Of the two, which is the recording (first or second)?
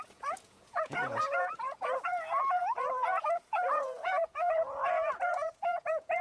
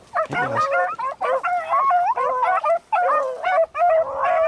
second